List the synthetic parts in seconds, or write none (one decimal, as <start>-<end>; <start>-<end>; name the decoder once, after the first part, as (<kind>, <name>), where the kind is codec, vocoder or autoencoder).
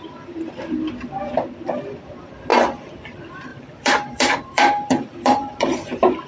2.5-3.0 (vocoder, BigVGAN v2); 3.5-6.3